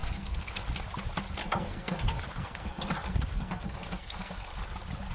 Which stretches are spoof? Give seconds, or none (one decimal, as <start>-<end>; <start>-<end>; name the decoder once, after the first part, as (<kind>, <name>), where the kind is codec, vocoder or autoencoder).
0.0-0.6 (codec, SNAC); 1.4-4.5